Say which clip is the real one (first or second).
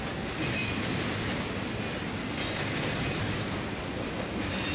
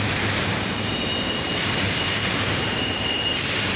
first